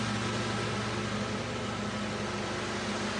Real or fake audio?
real